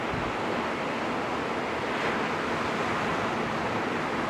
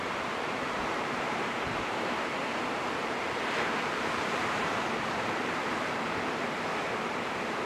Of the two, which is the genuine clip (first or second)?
first